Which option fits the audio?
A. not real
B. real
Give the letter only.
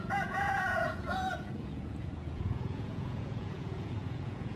A